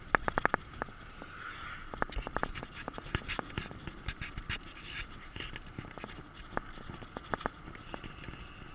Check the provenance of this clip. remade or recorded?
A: recorded